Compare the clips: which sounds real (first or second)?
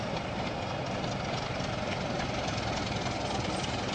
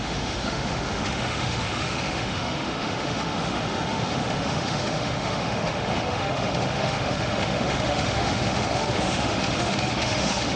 first